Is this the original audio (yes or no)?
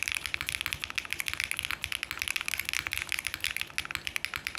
yes